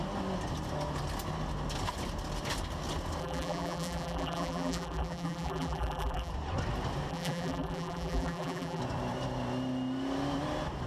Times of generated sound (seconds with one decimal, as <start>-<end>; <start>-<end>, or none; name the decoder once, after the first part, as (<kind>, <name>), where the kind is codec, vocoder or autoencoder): 3.2-6.3 (vocoder, BigVGAN v2); 7.1-8.8

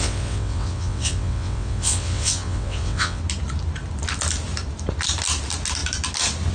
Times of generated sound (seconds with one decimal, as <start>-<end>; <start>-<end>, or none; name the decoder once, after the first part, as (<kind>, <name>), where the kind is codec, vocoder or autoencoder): 0.0-3.2 (vocoder, WaveNeXt)

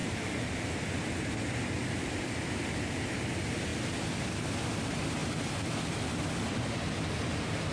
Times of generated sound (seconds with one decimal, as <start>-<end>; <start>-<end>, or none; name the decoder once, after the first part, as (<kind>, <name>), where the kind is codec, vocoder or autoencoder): none

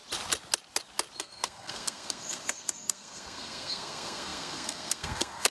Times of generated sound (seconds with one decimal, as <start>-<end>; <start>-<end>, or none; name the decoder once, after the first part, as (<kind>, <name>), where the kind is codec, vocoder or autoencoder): 1.2-5.5 (codec, SNAC)

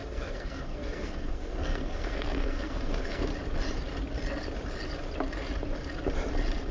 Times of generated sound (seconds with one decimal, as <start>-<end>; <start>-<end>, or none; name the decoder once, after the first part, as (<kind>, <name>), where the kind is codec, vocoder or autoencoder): 0.0-3.3 (codec, SNAC)